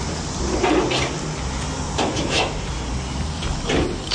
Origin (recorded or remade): recorded